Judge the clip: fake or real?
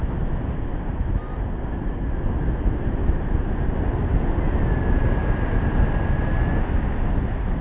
real